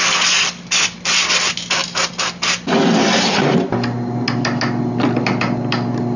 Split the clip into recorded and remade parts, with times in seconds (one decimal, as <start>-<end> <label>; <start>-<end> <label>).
0.0-6.2 recorded